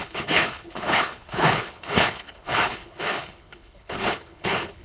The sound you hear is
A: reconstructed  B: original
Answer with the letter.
A